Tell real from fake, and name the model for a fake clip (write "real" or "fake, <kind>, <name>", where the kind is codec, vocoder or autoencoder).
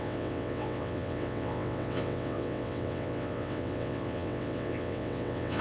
fake, vocoder, WaveNeXt